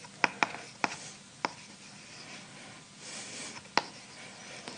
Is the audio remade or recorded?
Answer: recorded